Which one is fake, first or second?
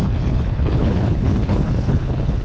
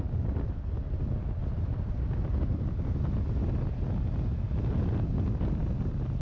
first